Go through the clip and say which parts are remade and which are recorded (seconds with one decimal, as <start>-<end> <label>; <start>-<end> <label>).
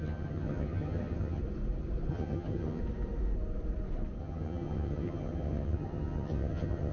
0.0-1.4 remade; 1.4-2.1 recorded; 2.1-2.8 remade; 2.8-4.2 recorded; 4.2-6.9 remade